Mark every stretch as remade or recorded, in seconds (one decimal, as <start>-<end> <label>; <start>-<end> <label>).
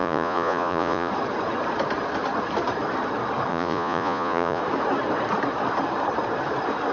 0.0-1.1 remade; 1.1-3.5 recorded; 3.5-4.6 remade; 4.6-6.9 recorded